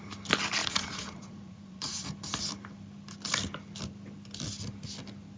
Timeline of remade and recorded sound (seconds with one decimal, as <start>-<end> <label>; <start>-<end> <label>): 0.0-0.6 recorded; 0.6-2.1 remade; 2.1-5.4 recorded

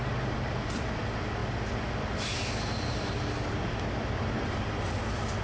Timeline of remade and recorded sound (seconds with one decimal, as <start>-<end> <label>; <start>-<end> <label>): 0.0-5.4 recorded

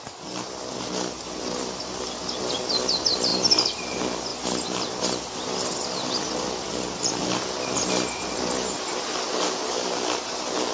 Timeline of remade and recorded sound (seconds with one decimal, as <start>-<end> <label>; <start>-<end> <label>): 0.0-10.7 recorded

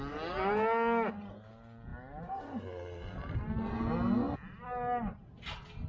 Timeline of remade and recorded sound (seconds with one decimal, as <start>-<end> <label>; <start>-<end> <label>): 0.0-5.9 recorded

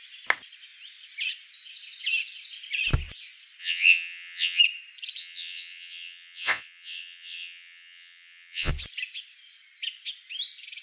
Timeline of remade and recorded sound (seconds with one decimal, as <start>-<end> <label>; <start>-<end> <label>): 0.0-3.6 recorded; 3.6-4.6 remade; 4.6-5.2 recorded; 5.2-8.7 remade; 8.7-10.8 recorded

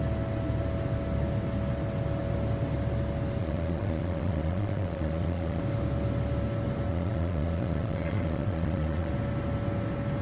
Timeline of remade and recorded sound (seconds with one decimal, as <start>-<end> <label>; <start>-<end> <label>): 0.0-3.4 recorded; 3.4-5.6 remade; 5.6-6.9 recorded; 6.9-9.1 remade; 9.1-10.2 recorded

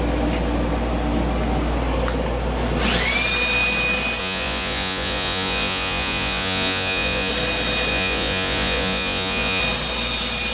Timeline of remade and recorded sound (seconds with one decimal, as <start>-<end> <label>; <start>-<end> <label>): 0.0-4.2 recorded; 4.2-7.3 remade; 7.3-7.9 recorded; 7.9-9.6 remade; 9.6-10.5 recorded

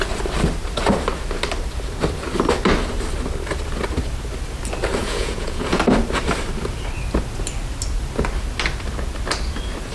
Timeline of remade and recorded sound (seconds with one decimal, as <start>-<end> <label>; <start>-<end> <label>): 0.0-5.0 recorded; 5.0-5.8 remade; 5.8-9.9 recorded